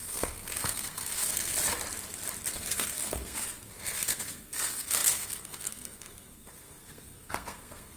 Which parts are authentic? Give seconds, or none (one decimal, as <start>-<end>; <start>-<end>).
1.5-2.5